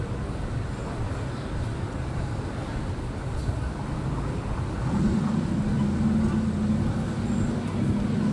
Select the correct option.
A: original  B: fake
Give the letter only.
A